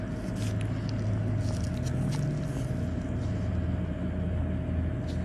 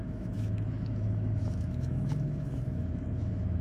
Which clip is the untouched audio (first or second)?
first